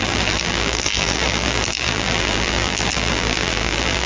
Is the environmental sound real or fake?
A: fake